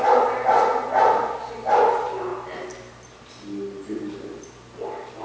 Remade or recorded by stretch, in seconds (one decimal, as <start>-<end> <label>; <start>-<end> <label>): 0.0-5.2 recorded